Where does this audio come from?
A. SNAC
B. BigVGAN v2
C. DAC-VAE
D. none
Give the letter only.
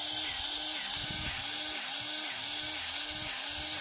D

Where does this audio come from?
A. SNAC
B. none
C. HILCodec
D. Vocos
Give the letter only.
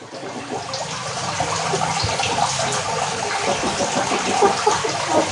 B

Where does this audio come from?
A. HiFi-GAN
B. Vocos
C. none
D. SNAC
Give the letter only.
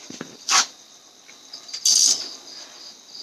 C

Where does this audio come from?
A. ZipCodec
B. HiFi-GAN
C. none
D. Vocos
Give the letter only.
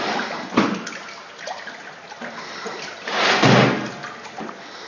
C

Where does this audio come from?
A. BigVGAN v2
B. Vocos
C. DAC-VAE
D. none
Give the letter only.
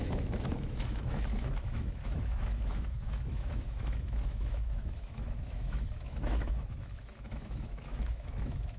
C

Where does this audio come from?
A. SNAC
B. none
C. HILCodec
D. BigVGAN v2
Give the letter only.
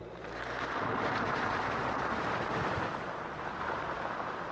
D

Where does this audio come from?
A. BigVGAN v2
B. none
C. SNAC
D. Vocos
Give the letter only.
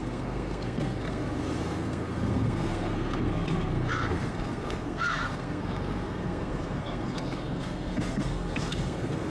C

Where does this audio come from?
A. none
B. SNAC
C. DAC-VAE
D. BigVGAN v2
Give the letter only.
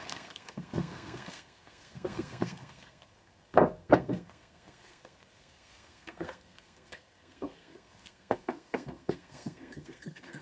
B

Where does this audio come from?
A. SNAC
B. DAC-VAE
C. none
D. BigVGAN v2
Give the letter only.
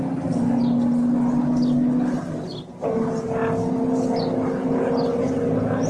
C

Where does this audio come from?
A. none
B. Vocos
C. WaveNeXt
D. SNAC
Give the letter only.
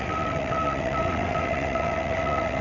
C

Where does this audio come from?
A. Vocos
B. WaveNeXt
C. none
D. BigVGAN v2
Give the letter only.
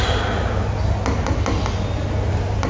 C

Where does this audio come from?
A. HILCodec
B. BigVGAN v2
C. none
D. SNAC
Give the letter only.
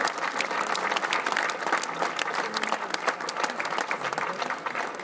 C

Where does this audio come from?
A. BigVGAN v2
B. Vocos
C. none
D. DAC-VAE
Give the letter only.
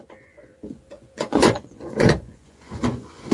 B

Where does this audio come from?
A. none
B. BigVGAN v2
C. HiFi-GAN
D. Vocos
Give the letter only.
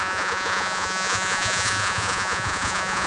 D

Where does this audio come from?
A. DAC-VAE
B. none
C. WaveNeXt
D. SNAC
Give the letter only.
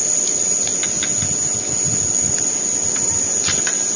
B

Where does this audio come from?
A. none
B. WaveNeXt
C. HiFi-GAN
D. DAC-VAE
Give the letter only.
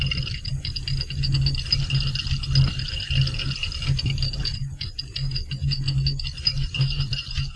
A